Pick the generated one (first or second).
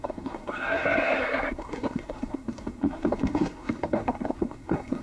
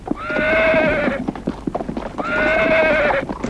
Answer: first